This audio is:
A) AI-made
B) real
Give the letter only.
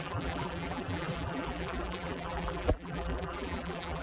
A